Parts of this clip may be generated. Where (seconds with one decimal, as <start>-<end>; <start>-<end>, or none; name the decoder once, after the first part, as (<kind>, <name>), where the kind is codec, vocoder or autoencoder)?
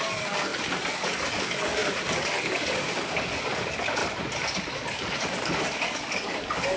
0.0-4.0 (codec, DAC); 4.7-6.8